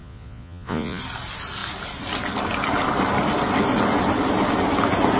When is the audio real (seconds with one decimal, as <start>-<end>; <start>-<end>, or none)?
1.0-5.2